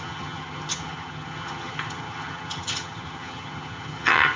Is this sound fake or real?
fake